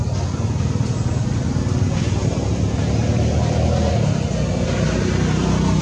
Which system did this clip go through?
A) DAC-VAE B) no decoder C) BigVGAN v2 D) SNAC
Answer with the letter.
B